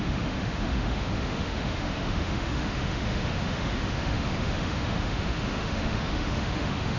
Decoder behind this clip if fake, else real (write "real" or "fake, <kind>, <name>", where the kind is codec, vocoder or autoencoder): fake, autoencoder, DAC-VAE